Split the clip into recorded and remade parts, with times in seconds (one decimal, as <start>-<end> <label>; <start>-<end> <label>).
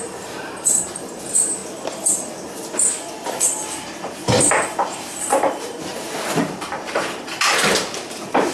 0.0-1.6 remade; 1.6-3.3 recorded; 3.3-5.9 remade; 5.9-6.4 recorded; 6.4-8.5 remade